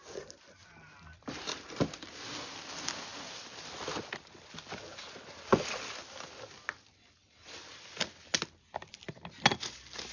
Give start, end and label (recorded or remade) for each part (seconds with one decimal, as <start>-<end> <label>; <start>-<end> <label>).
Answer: 0.0-10.1 recorded